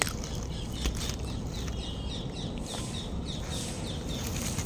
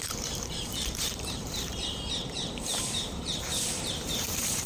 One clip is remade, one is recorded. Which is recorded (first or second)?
first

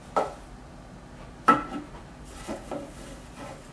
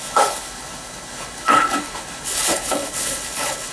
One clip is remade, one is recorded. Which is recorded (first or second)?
first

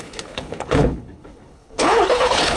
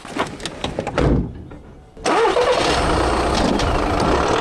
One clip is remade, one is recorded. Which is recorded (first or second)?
second